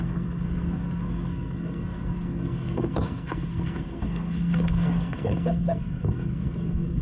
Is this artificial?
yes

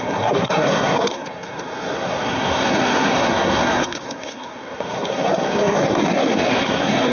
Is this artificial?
yes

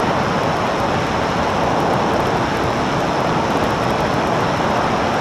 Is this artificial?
no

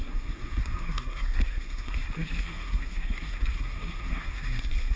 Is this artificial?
yes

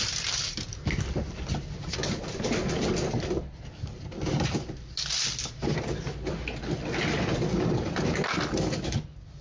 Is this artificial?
no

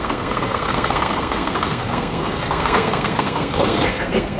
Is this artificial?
yes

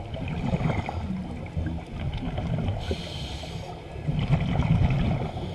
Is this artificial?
no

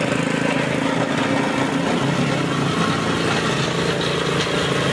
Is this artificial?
no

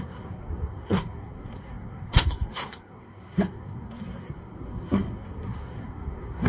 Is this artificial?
yes